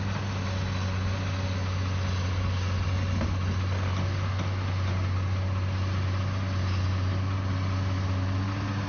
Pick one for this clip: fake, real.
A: real